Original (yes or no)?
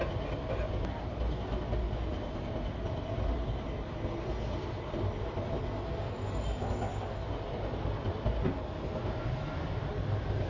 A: yes